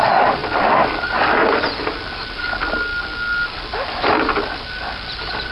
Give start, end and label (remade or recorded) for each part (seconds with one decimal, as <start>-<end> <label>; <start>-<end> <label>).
0.0-5.5 recorded